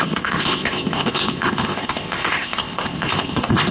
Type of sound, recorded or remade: remade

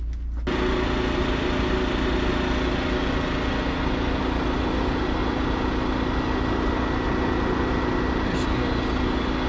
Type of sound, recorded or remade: recorded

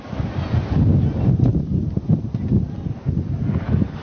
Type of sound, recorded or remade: recorded